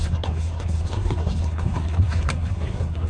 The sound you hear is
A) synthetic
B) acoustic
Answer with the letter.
A